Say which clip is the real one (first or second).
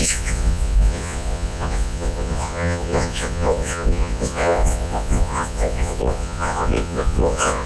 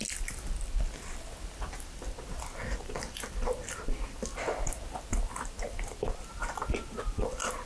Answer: second